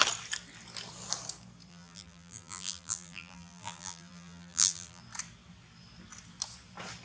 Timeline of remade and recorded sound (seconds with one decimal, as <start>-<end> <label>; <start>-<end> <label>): 0.0-1.7 recorded; 1.7-5.0 remade; 5.0-7.0 recorded